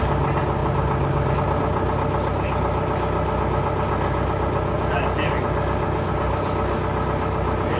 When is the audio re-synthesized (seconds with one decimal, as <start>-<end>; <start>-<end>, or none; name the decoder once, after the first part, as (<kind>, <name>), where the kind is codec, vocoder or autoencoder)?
none